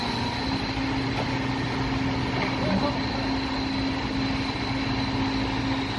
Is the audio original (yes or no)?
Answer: yes